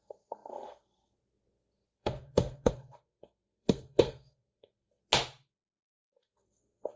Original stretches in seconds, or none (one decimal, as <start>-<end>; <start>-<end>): 5.0-5.8